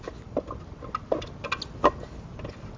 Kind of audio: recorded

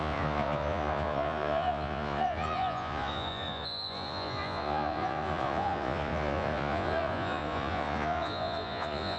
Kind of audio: remade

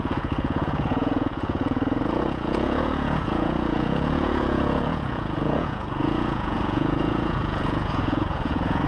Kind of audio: remade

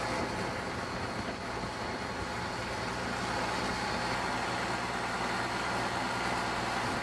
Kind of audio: recorded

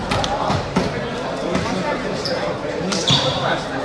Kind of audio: remade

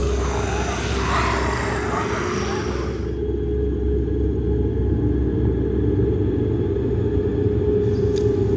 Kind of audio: recorded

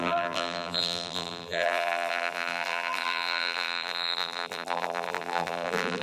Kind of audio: remade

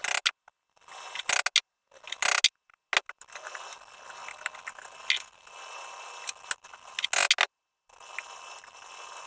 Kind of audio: recorded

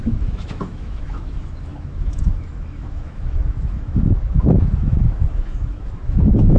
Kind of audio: remade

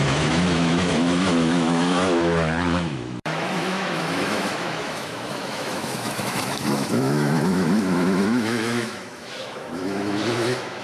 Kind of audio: remade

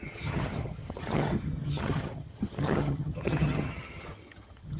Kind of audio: remade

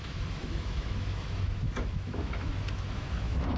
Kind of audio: remade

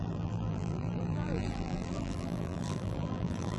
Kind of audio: remade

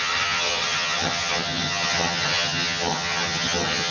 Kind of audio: remade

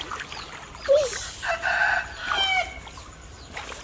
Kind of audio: recorded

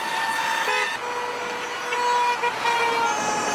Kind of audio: recorded